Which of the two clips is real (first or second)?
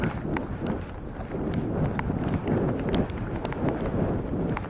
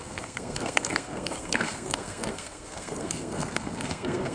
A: first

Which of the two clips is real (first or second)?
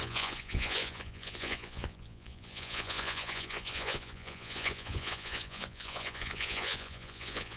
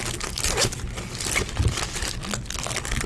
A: second